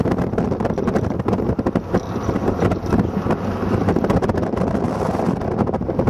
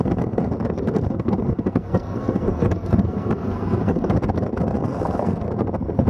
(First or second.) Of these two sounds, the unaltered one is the first